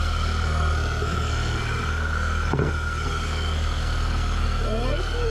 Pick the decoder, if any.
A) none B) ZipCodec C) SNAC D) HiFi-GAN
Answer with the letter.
C